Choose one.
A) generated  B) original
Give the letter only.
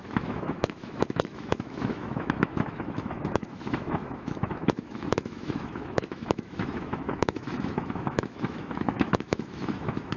A